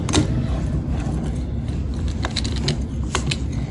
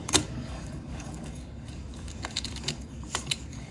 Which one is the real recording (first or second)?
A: first